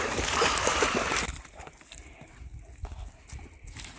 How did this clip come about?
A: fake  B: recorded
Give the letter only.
B